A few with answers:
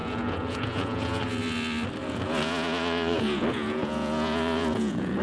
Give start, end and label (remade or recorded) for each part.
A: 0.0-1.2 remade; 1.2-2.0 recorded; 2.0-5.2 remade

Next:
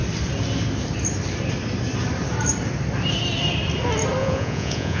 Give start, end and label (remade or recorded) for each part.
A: 0.0-4.2 recorded; 4.2-5.0 remade

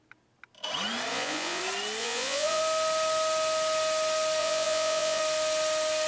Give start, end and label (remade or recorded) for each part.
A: 0.0-1.1 recorded; 1.1-1.6 remade; 1.6-2.0 recorded; 2.0-2.6 remade; 2.6-4.4 recorded; 4.4-5.2 remade; 5.2-6.1 recorded

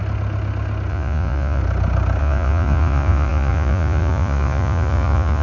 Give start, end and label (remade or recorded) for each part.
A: 0.0-0.9 recorded; 0.9-1.6 remade; 1.6-2.2 recorded; 2.2-5.4 remade